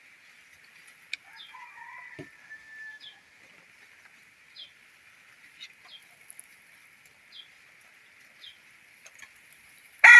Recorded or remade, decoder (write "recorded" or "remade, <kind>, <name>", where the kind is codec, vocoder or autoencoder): recorded